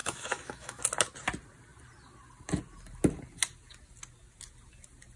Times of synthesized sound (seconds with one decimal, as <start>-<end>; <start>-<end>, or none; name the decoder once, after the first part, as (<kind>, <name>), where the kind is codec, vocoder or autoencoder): 0.0-0.8 (autoencoder, DAC-VAE)